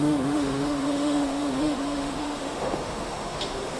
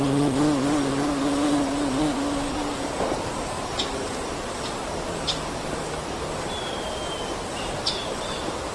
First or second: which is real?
second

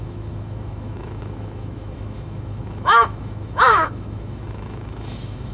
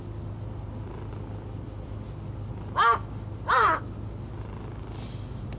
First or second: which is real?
second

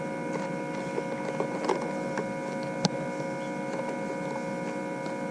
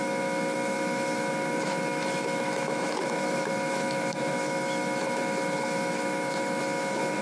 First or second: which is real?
first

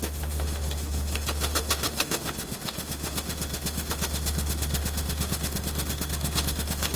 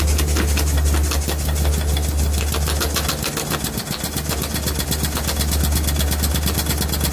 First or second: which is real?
second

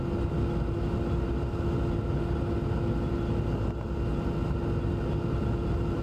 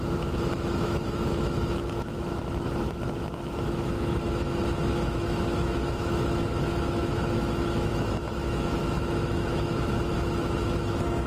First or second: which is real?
first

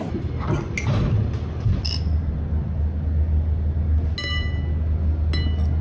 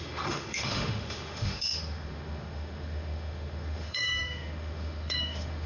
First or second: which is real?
first